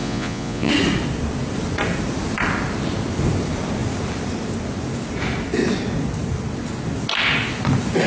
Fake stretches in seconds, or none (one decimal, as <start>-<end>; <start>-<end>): 0.0-0.7